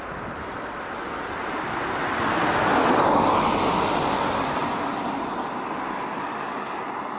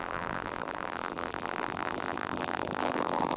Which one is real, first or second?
first